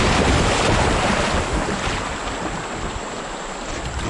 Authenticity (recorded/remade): recorded